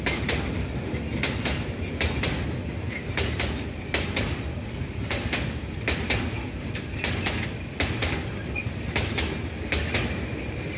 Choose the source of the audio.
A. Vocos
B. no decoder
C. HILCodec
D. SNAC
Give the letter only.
B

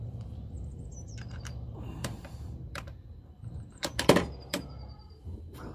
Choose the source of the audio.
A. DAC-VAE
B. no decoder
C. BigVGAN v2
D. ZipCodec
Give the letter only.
C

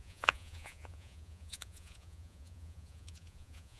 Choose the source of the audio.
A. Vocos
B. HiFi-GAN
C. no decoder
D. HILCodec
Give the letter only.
A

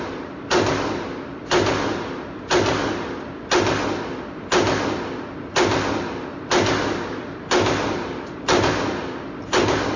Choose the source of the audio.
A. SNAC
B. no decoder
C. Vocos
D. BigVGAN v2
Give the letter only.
B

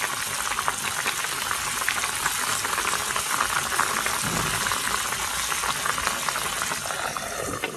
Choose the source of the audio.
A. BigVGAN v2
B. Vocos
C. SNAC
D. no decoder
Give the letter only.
D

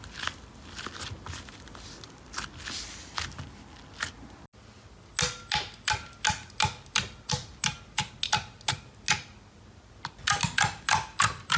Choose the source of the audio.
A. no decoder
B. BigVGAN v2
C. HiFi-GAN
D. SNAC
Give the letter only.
A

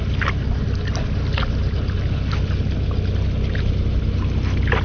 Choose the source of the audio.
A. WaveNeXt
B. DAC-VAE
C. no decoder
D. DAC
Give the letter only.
C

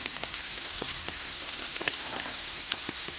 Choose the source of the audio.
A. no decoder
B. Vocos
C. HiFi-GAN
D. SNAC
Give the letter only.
D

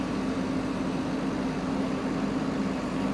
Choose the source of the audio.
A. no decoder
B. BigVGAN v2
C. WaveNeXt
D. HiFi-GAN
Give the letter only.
A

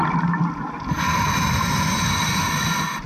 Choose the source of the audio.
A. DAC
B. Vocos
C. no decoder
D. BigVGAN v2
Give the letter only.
C